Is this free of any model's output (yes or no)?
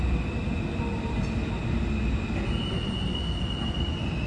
yes